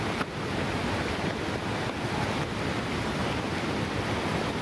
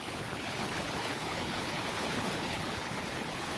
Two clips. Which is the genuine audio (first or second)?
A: first